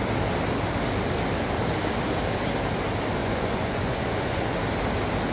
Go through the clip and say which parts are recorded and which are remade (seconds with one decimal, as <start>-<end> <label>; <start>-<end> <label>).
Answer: 0.0-3.2 recorded; 3.2-4.6 remade; 4.6-5.3 recorded